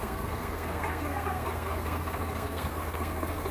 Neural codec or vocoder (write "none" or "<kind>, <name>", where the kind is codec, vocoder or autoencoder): codec, SNAC